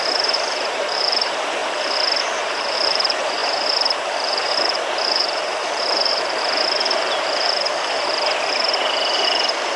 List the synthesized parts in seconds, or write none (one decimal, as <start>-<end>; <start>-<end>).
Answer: 0.0-1.6; 2.2-9.8